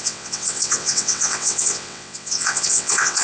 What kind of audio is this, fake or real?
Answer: fake